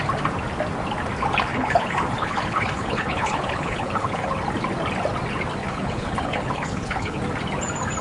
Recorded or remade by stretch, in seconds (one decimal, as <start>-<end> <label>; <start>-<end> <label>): 0.0-1.5 recorded; 1.5-4.3 remade; 4.3-5.6 recorded; 5.6-7.2 remade; 7.2-8.0 recorded